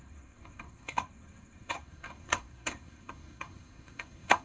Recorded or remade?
remade